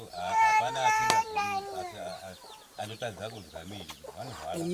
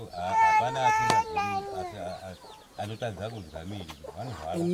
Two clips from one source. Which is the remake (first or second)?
first